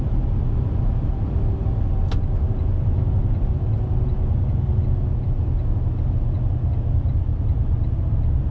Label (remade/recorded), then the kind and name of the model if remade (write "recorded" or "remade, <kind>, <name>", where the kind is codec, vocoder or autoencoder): recorded